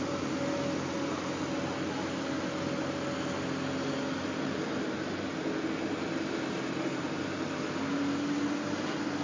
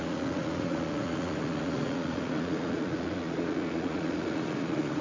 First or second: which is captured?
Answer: first